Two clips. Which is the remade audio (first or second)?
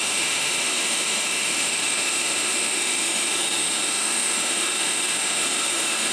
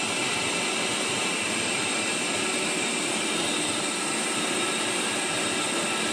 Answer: first